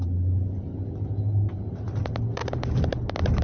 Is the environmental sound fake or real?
real